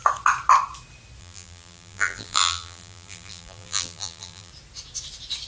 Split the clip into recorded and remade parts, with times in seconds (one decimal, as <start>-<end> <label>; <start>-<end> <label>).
0.0-1.2 recorded; 1.2-4.5 remade; 4.5-5.5 recorded